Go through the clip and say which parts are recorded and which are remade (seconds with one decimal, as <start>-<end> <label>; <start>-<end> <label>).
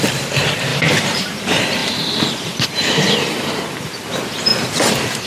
0.0-0.7 recorded; 0.7-1.4 remade; 1.4-1.8 recorded; 1.8-3.9 remade; 3.9-5.3 recorded